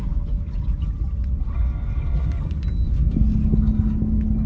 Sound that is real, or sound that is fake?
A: real